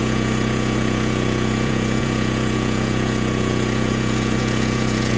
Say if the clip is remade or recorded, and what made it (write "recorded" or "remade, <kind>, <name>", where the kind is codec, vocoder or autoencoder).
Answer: remade, vocoder, Vocos